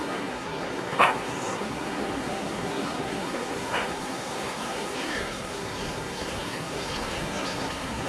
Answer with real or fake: fake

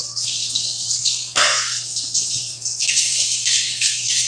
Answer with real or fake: fake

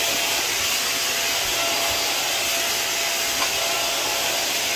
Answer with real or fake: real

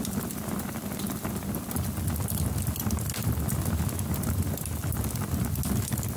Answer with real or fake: real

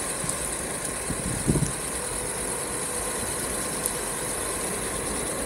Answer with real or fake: real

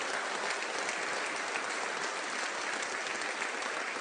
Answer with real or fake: real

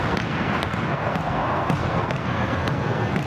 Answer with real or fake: fake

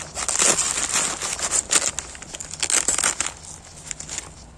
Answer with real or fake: real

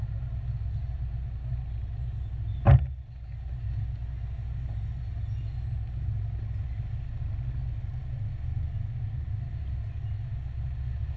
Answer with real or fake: real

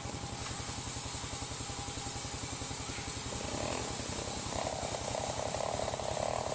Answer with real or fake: real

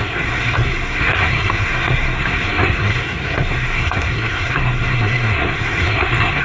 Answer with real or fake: fake